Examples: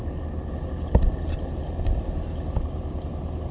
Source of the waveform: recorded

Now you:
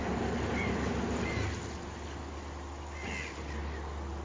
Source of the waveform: recorded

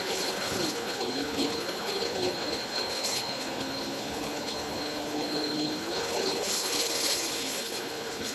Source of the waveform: remade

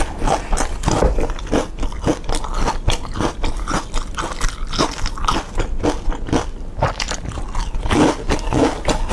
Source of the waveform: recorded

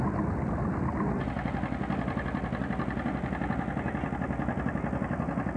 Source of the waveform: recorded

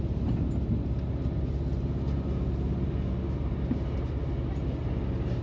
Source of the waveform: recorded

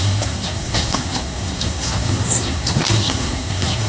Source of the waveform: remade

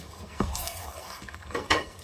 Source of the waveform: remade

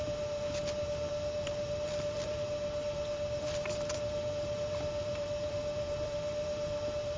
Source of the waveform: remade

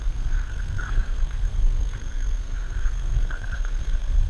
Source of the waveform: remade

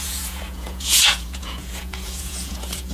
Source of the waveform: remade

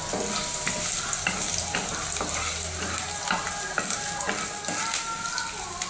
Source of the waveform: recorded